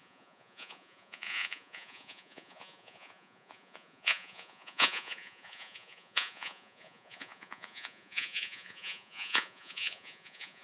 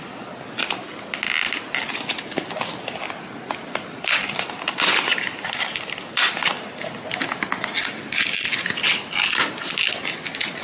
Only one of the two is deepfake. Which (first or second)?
first